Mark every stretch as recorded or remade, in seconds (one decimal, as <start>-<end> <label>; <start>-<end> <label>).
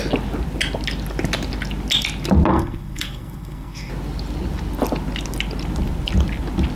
0.0-2.5 recorded; 2.5-3.9 remade; 3.9-6.8 recorded